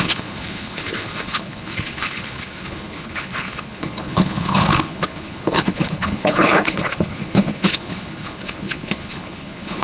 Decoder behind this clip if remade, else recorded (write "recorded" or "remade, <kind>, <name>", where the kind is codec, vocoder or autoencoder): remade, codec, HILCodec